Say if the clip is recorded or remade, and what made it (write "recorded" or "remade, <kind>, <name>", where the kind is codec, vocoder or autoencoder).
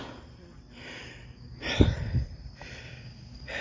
recorded